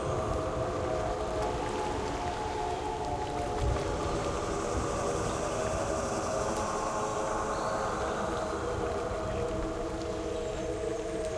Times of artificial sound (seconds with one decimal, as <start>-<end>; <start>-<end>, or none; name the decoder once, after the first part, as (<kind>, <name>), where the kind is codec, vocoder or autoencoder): none